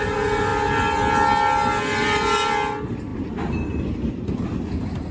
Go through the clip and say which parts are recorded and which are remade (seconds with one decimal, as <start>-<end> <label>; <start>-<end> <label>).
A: 0.0-5.1 recorded